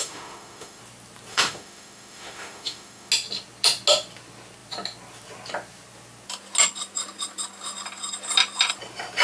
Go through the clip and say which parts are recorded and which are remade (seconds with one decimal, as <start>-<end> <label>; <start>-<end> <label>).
0.0-0.8 remade; 0.8-1.3 recorded; 1.3-3.1 remade; 3.1-9.2 recorded